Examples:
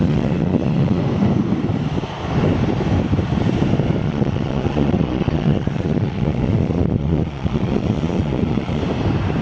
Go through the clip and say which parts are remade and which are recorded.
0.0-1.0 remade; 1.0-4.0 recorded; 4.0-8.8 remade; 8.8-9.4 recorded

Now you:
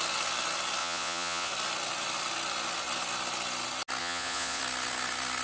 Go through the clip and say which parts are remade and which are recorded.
0.0-0.8 recorded; 0.8-1.5 remade; 1.5-4.0 recorded; 4.0-4.6 remade; 4.6-5.4 recorded

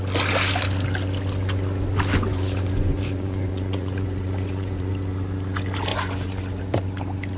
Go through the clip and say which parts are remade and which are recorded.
0.0-2.3 recorded; 2.3-4.9 remade; 4.9-5.9 recorded; 5.9-6.6 remade; 6.6-7.4 recorded

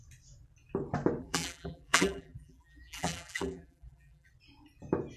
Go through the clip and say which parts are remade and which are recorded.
0.0-1.2 recorded; 1.2-4.3 remade; 4.3-5.2 recorded

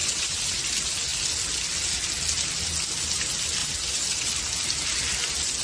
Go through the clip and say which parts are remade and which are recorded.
0.0-0.6 remade; 0.6-3.6 recorded; 3.6-4.3 remade; 4.3-5.6 recorded

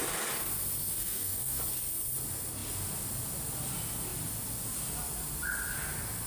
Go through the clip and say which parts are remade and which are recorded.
0.0-0.9 recorded; 0.9-1.6 remade; 1.6-6.3 recorded